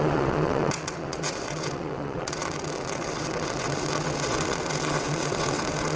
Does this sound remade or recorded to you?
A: remade